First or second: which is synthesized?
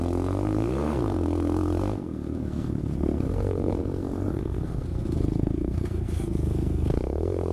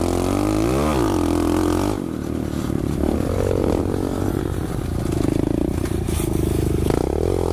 first